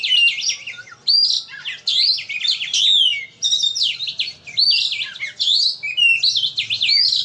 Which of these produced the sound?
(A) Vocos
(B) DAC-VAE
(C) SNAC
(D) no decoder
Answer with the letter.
D